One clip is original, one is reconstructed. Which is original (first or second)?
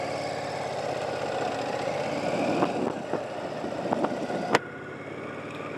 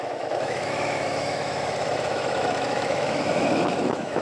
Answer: first